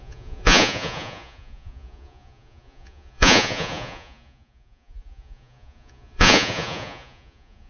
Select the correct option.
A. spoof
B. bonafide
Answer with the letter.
A